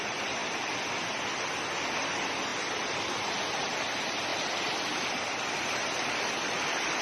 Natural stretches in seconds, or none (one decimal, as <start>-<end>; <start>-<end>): 0.4-0.9